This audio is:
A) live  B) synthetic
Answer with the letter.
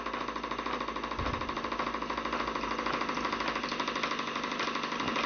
A